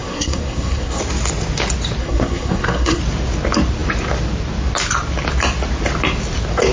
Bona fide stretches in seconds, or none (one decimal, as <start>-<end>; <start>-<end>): 1.0-2.0; 3.0-6.7